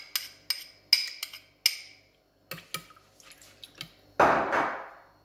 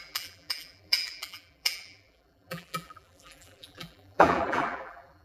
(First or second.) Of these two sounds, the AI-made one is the second